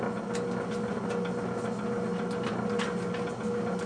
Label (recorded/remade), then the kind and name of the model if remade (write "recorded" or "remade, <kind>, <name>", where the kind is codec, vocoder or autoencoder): recorded